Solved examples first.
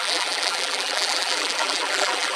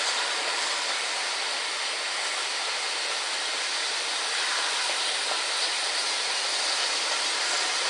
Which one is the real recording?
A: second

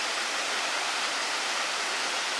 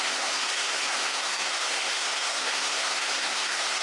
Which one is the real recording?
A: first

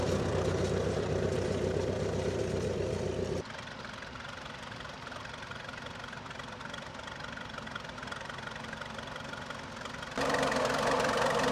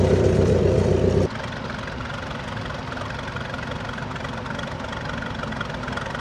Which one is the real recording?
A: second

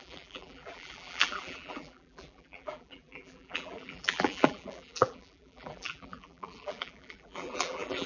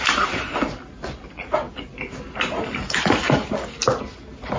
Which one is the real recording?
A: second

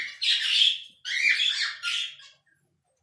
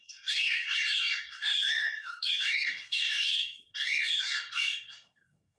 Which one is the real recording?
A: first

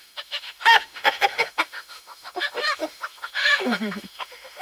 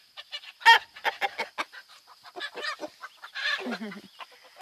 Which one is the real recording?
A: second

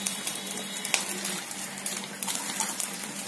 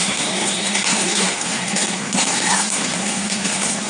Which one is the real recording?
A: first